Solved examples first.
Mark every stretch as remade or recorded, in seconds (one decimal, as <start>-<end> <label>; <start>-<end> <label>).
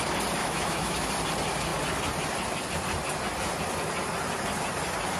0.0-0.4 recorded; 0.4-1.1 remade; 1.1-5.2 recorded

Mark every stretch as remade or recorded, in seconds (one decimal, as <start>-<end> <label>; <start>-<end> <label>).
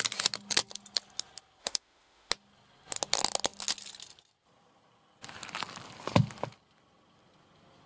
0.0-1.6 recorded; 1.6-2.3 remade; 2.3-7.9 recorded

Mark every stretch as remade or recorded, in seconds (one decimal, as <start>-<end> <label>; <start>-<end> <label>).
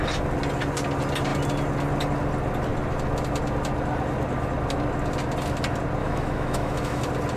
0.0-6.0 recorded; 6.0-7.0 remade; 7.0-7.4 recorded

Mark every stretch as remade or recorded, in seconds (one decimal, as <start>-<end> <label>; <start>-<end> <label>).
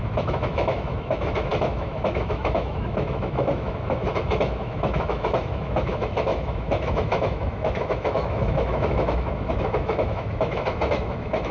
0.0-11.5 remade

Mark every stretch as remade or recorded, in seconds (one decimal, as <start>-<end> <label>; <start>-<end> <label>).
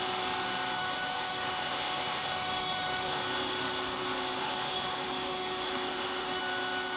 0.0-0.8 recorded; 0.8-3.2 remade; 3.2-4.4 recorded; 4.4-6.4 remade; 6.4-7.0 recorded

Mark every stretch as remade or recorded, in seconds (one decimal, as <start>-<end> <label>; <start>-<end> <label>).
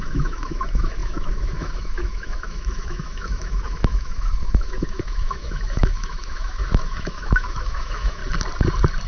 0.0-8.2 remade; 8.2-9.1 recorded